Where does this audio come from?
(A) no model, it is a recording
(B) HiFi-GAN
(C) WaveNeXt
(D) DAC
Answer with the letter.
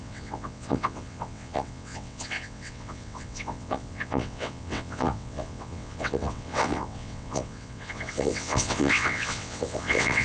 C